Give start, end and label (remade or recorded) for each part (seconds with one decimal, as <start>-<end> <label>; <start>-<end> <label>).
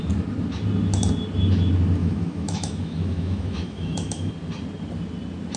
0.0-2.0 recorded; 2.0-4.3 remade; 4.3-5.6 recorded